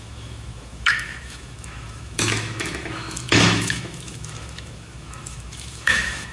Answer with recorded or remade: remade